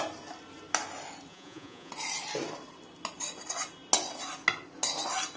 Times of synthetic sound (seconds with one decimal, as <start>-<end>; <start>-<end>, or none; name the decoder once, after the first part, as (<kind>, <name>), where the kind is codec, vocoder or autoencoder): 1.3-1.9 (vocoder, Vocos)